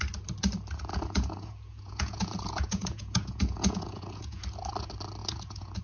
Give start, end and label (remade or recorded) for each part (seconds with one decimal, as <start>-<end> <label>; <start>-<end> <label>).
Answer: 0.0-0.9 recorded; 0.9-4.4 remade; 4.4-5.2 recorded; 5.2-5.8 remade